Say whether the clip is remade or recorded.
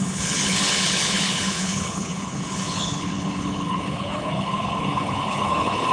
remade